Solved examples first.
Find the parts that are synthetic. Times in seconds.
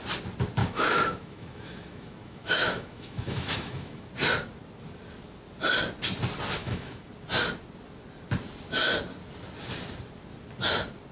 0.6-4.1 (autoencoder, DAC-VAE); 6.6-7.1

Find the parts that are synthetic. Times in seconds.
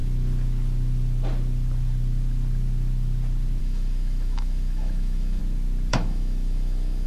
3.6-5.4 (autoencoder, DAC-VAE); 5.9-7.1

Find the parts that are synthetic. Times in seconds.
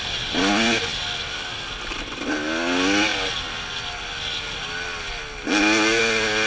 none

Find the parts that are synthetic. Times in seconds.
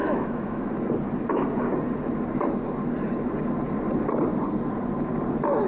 0.0-0.7 (autoencoder, DAC-VAE)